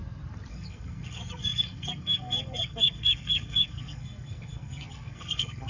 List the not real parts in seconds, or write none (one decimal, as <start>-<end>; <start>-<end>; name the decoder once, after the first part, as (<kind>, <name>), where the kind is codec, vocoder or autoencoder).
0.5-5.7 (codec, SNAC)